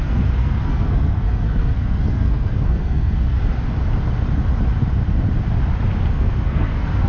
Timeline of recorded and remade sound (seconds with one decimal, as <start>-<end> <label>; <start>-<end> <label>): 0.0-3.4 remade; 3.4-6.1 recorded; 6.1-7.1 remade